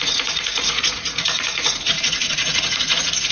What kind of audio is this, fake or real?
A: fake